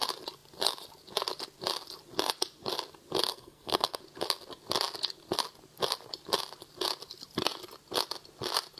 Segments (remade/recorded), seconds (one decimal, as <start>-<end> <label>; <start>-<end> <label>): 0.0-3.3 recorded; 3.3-4.0 remade; 4.0-8.8 recorded